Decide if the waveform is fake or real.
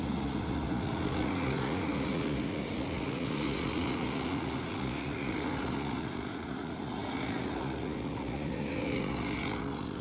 fake